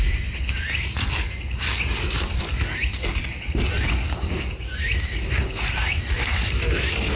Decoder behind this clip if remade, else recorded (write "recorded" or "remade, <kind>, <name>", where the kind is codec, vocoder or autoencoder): recorded